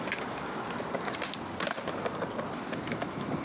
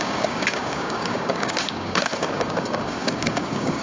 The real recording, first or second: first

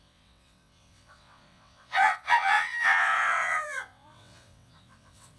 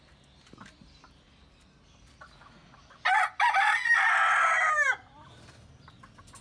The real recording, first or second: second